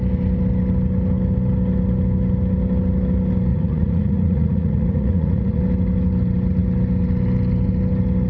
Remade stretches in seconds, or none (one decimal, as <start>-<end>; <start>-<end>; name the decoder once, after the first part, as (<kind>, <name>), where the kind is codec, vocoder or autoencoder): 3.5-5.6 (vocoder, Vocos)